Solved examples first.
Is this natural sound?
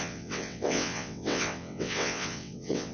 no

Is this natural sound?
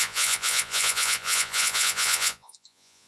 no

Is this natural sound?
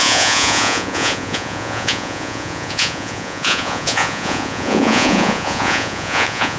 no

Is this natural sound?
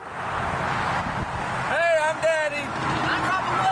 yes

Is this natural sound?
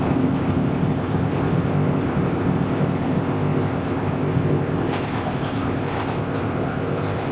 no